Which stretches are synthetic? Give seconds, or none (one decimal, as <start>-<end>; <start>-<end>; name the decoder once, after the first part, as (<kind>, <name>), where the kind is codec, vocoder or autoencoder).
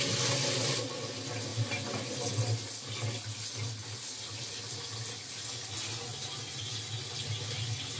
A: none